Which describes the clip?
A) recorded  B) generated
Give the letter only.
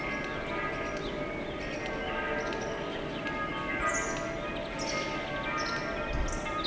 A